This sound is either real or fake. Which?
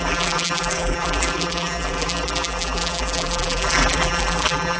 fake